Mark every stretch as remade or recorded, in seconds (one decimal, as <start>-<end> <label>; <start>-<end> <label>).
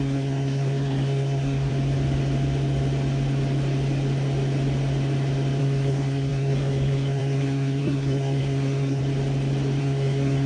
0.0-1.7 remade; 1.7-5.6 recorded; 5.6-9.0 remade; 9.0-9.8 recorded; 9.8-10.5 remade